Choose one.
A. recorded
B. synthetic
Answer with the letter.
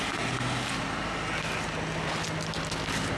A